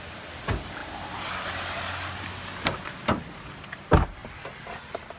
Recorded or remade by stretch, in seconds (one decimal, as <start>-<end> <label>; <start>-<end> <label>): 0.0-5.2 recorded